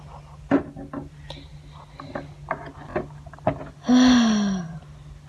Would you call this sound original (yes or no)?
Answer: yes